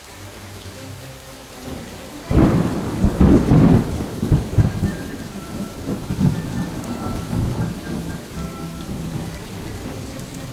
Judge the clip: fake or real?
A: fake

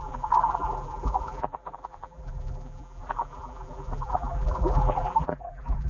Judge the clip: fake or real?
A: fake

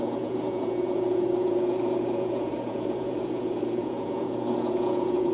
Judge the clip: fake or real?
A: fake